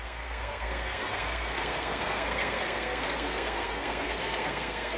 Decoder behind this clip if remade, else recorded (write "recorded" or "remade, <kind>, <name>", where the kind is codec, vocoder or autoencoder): remade, codec, SNAC